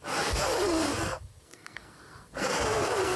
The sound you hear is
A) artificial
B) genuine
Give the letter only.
A